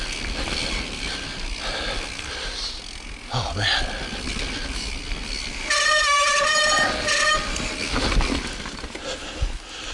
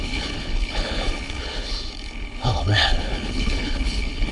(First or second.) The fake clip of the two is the second